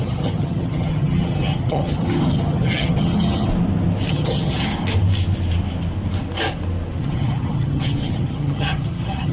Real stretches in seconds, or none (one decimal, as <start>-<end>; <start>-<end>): 3.5-4.1; 4.7-7.0